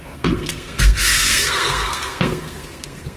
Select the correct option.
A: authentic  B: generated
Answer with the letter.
B